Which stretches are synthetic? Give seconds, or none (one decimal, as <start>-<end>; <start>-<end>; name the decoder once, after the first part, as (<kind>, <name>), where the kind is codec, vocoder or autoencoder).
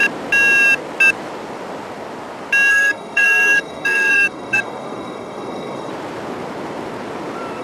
2.7-5.9 (codec, SNAC)